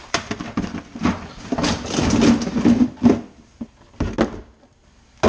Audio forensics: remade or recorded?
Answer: recorded